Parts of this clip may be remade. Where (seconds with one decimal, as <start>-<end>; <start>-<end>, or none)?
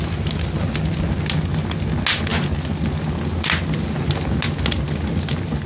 none